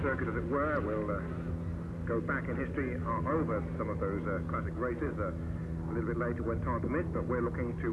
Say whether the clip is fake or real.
real